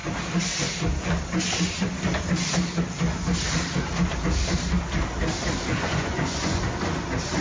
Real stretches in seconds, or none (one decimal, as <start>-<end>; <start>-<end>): 0.0-5.7; 6.6-7.4